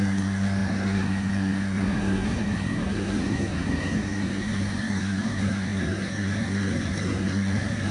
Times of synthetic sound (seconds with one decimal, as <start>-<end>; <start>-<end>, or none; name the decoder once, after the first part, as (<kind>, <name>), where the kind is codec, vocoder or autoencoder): 0.0-7.9 (codec, SNAC)